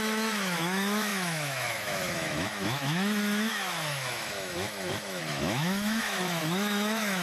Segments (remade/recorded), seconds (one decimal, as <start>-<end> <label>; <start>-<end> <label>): 0.0-7.2 remade